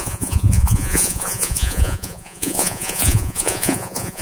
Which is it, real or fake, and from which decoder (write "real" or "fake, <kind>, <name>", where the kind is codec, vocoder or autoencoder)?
fake, vocoder, Vocos